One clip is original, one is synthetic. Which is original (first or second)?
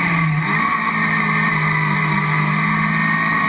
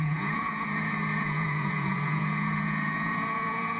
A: first